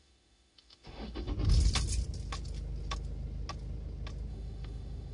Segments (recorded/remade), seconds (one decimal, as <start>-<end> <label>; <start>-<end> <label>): 0.0-1.3 remade; 1.3-4.3 recorded; 4.3-5.1 remade